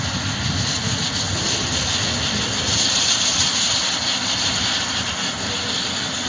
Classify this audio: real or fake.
real